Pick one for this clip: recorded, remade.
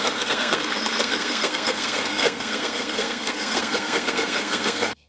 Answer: remade